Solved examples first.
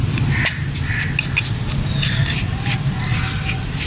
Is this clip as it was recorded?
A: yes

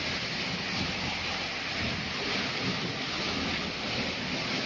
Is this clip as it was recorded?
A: yes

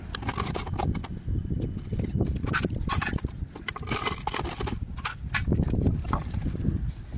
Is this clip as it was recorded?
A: yes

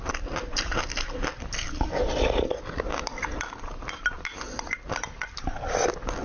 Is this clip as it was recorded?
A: yes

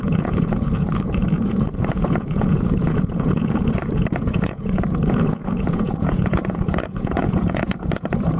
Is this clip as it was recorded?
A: no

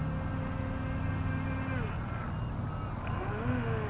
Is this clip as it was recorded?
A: yes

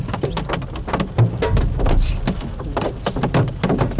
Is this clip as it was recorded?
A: yes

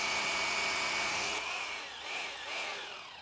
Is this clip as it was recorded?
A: no